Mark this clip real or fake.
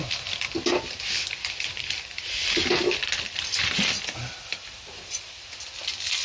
real